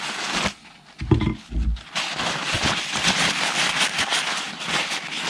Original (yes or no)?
yes